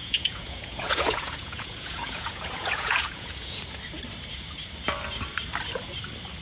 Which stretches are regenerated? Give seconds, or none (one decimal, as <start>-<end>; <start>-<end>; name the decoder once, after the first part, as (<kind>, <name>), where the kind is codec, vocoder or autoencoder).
0.0-3.6 (vocoder, Vocos)